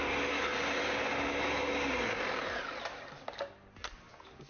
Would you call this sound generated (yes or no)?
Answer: no